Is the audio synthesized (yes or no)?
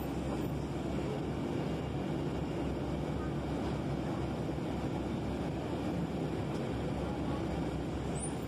no